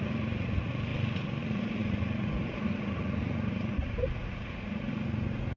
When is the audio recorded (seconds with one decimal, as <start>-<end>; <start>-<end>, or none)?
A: 0.9-1.4